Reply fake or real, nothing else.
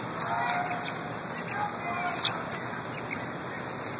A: real